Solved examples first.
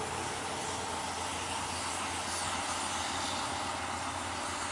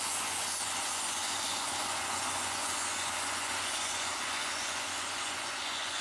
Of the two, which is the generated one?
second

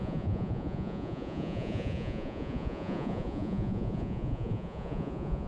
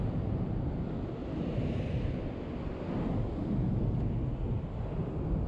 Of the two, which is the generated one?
first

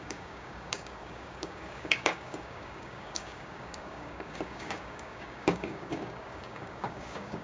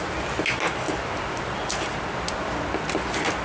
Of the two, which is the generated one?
first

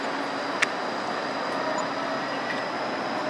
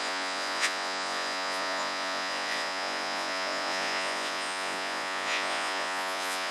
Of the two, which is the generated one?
second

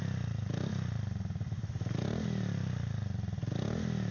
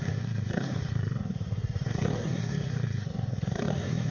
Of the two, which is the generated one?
second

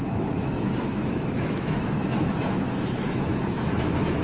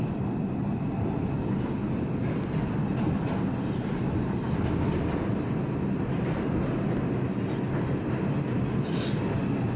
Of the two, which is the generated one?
first